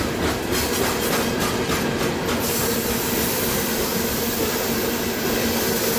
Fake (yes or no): no